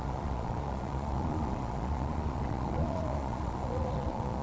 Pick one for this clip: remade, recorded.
remade